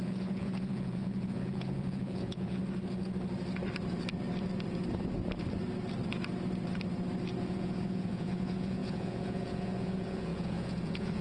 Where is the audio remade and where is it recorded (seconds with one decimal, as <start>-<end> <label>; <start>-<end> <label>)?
0.0-2.6 remade; 2.6-7.4 recorded; 7.4-11.2 remade